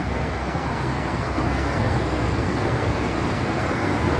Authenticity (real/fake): fake